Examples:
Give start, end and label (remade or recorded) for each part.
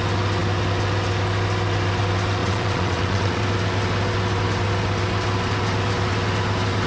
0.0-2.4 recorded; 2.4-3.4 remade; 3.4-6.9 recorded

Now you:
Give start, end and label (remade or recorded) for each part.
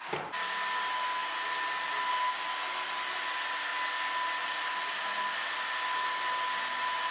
0.0-7.1 recorded